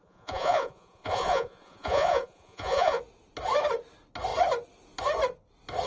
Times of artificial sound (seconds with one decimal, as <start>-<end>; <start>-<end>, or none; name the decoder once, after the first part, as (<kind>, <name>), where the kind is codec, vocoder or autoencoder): 0.0-3.0 (vocoder, Vocos)